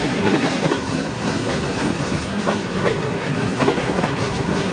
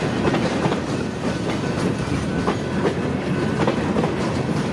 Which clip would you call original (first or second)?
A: second